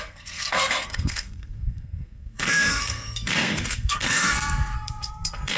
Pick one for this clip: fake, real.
fake